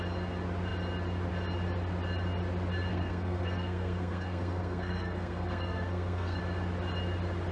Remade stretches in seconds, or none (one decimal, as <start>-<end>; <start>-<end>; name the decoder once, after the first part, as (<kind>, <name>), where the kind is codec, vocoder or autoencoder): 2.9-6.4 (codec, SNAC)